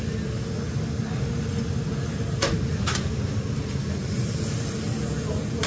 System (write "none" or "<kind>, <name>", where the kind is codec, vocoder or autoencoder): none